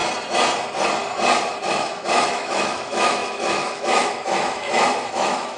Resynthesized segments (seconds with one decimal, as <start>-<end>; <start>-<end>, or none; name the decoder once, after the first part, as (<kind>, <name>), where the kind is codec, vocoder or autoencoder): 1.7-5.6 (autoencoder, DAC-VAE)